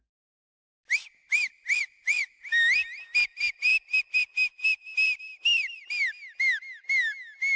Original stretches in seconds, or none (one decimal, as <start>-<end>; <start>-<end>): 0.0-7.6